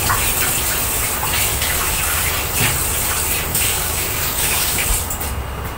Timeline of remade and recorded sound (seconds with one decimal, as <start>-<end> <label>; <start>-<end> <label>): 0.0-1.5 recorded; 1.5-2.3 remade; 2.3-3.5 recorded; 3.5-4.9 remade; 4.9-5.8 recorded